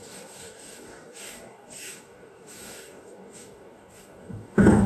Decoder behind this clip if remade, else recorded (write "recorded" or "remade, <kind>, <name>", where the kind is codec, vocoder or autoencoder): remade, codec, DAC